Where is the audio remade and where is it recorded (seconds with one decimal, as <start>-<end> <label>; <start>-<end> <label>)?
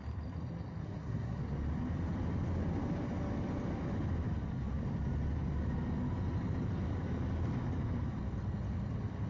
0.0-0.8 recorded; 0.8-1.4 remade; 1.4-9.3 recorded